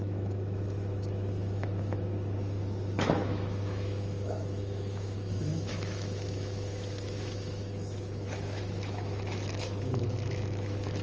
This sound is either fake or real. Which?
fake